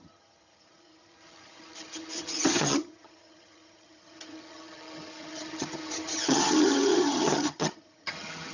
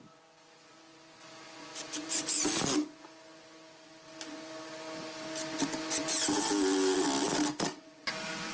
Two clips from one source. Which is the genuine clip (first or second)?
second